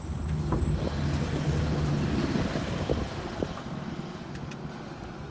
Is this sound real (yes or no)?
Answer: yes